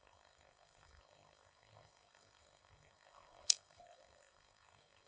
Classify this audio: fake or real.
fake